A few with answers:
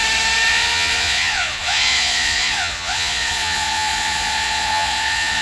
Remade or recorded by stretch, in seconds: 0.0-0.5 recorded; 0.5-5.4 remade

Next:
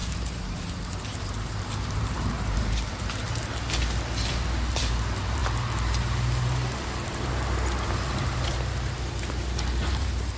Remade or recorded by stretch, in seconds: 0.0-3.2 remade; 3.2-4.7 recorded; 4.7-5.4 remade; 5.4-9.7 recorded; 9.7-10.4 remade

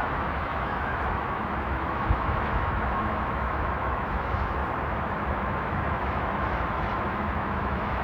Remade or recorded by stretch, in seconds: 0.0-4.6 remade; 4.6-5.3 recorded; 5.3-8.0 remade

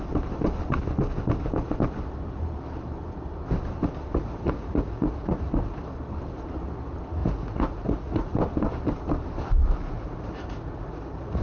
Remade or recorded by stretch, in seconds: 0.0-4.1 recorded; 4.1-5.8 remade; 5.8-7.2 recorded; 7.2-8.3 remade; 8.3-9.8 recorded; 9.8-11.4 remade

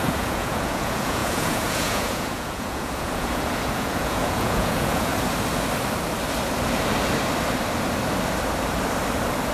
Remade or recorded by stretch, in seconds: 0.0-5.1 remade; 5.1-9.5 recorded

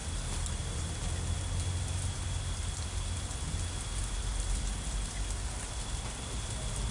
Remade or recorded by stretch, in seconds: 0.0-6.9 recorded